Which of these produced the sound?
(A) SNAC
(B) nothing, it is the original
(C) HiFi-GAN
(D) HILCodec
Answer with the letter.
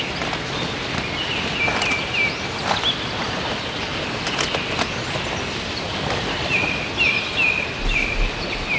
B